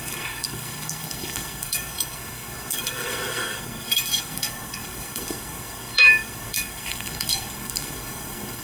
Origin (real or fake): fake